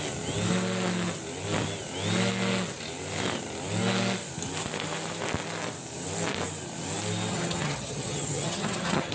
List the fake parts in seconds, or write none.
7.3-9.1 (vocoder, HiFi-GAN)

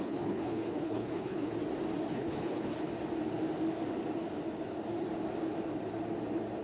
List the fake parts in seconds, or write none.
0.0-1.5 (codec, HILCodec); 2.1-2.9

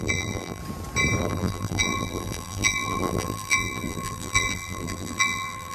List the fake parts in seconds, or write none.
0.0-0.6 (vocoder, BigVGAN v2); 1.2-5.7

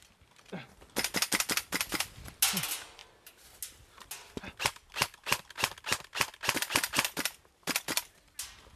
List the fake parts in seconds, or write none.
none

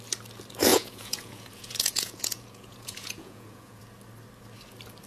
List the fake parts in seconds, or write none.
0.7-3.8 (vocoder, Vocos)